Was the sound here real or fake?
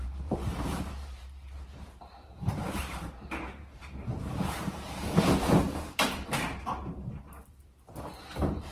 fake